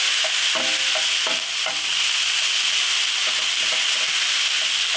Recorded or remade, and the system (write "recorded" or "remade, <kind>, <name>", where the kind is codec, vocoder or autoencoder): recorded